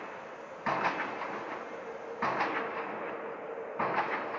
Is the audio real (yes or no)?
yes